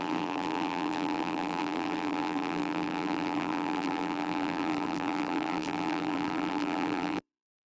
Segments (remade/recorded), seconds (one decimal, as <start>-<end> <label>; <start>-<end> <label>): 0.0-7.6 remade